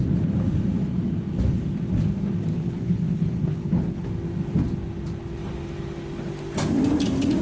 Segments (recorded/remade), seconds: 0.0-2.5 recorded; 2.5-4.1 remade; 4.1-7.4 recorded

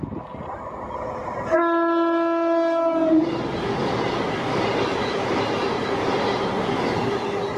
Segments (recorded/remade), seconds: 0.0-7.6 recorded

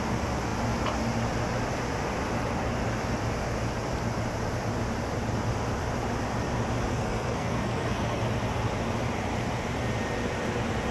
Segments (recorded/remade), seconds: 0.0-6.9 recorded; 6.9-8.2 remade; 8.2-10.9 recorded